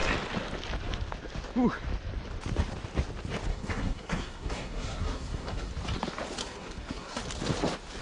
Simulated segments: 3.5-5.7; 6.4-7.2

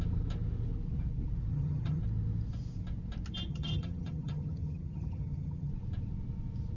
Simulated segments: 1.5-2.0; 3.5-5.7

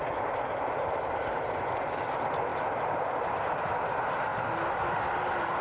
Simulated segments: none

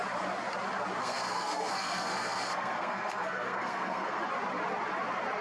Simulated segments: 1.0-4.2